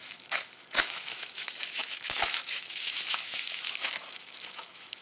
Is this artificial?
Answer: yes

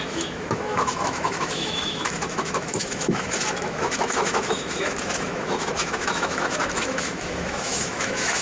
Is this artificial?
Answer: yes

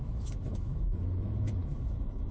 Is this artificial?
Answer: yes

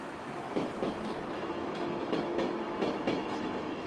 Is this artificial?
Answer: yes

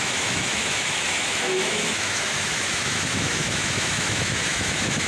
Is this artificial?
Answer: yes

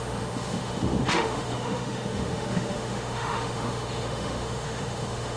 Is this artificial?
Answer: yes